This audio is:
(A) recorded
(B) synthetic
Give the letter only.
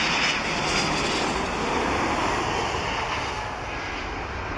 A